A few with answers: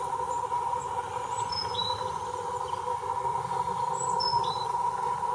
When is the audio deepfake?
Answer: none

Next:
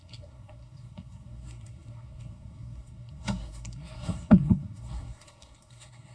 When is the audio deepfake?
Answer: 0.0-6.1 (codec, SNAC)

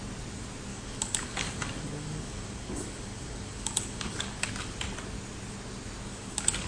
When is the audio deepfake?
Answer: 0.7-4.5 (codec, DAC); 6.1-6.7

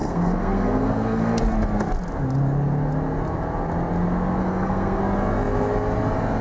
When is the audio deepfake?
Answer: 0.0-1.4 (codec, SNAC); 4.4-5.0